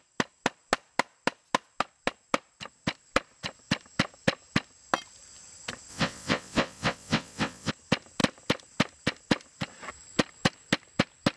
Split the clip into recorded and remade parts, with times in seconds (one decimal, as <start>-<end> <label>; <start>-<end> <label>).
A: 0.0-5.9 recorded; 5.9-7.7 remade; 7.7-11.4 recorded